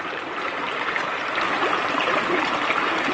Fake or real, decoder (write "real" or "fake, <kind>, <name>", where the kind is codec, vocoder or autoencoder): fake, vocoder, BigVGAN v2